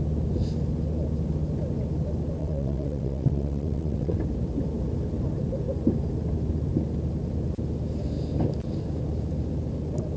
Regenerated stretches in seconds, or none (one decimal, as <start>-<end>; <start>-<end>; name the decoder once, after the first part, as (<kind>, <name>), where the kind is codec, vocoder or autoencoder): 2.4-4.2 (vocoder, WaveNeXt)